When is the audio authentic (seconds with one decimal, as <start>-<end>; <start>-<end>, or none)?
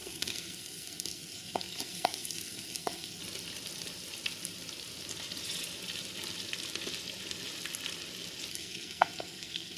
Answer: 3.2-8.5